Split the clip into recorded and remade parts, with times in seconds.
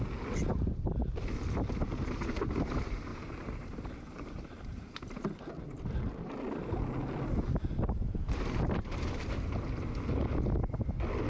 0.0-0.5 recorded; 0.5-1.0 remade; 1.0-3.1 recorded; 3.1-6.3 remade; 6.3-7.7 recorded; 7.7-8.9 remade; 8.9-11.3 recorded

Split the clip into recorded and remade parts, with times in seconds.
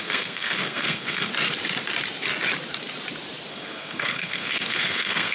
0.0-1.3 remade; 1.3-3.5 recorded; 3.5-5.3 remade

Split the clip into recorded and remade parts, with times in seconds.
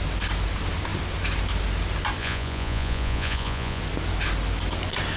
0.0-2.2 recorded; 2.2-3.8 remade; 3.8-5.2 recorded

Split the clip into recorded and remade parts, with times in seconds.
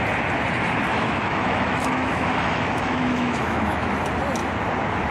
0.0-0.9 recorded; 0.9-4.0 remade; 4.0-5.1 recorded